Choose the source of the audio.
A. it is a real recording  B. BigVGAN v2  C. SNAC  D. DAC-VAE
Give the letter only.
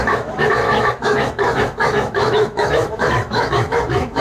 D